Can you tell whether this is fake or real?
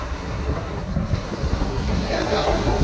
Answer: fake